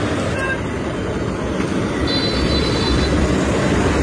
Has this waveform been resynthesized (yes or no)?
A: no